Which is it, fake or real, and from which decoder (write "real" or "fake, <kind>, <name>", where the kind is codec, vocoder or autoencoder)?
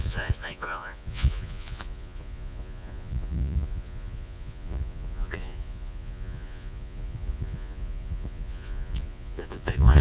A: fake, vocoder, Vocos